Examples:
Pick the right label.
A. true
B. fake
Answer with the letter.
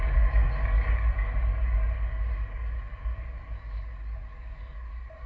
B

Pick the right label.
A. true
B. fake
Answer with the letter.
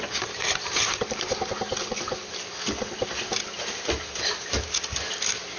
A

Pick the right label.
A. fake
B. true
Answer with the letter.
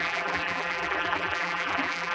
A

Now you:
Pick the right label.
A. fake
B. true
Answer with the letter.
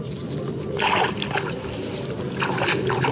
B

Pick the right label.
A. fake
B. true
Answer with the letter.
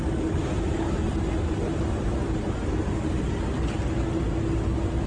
B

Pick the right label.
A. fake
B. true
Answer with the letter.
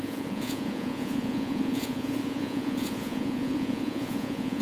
A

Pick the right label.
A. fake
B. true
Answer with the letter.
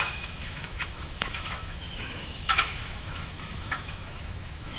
A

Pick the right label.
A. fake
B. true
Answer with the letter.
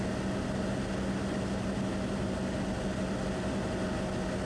B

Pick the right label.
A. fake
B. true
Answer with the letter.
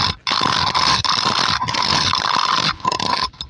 B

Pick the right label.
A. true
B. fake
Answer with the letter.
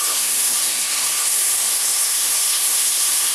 B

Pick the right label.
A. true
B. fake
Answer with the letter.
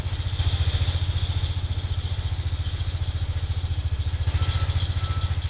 A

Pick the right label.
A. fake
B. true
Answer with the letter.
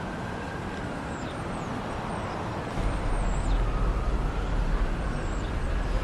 B